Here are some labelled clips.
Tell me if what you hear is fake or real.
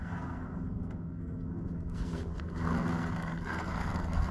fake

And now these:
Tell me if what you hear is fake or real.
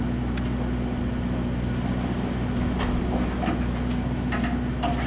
real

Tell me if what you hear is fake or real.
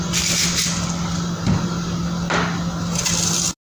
real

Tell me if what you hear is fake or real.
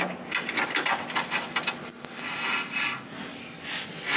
real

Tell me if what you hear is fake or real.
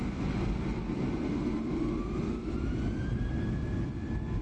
real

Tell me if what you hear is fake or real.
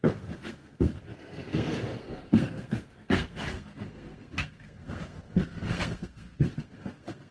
fake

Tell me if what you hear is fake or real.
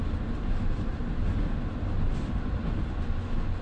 real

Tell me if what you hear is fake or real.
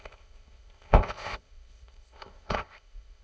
fake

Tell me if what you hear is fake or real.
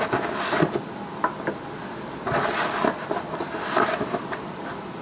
real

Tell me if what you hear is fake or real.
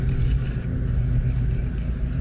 real